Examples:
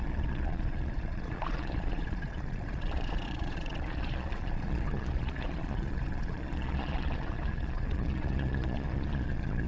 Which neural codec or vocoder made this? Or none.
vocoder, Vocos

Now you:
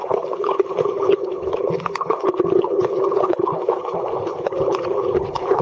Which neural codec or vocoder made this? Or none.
codec, HILCodec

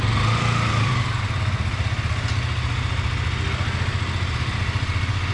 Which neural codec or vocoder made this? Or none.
none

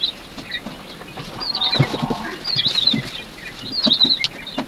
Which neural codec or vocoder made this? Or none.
none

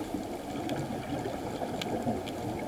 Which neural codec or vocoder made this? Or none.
none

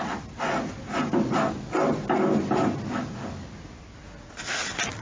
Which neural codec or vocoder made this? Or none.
none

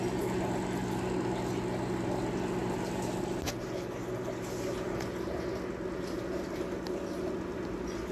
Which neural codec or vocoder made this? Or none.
none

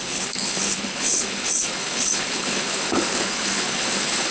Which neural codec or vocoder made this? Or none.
codec, HILCodec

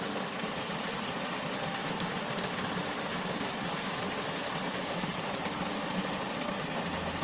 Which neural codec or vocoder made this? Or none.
none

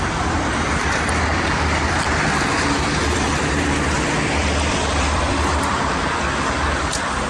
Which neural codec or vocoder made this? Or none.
vocoder, BigVGAN v2